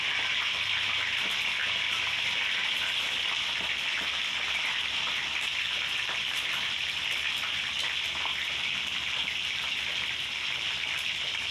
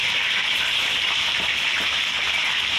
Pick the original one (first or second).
first